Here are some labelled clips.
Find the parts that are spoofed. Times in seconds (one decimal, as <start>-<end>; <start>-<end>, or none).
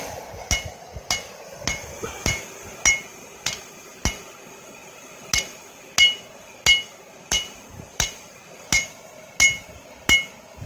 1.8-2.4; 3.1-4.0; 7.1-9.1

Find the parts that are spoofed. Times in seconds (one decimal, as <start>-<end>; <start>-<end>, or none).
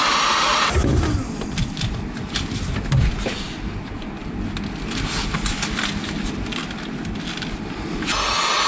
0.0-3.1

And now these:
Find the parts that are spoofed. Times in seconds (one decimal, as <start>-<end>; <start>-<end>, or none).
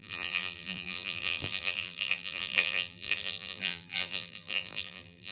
0.0-5.3